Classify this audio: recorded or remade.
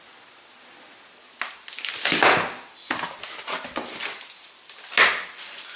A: recorded